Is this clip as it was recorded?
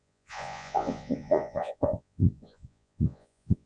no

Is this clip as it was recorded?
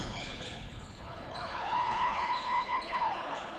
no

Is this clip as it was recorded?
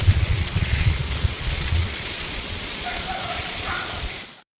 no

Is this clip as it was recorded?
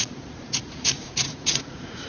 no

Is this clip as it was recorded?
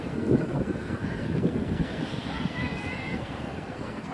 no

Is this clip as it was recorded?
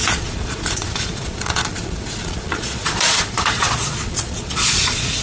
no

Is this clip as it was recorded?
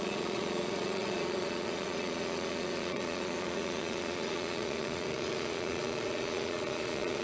no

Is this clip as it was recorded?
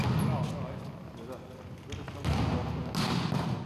yes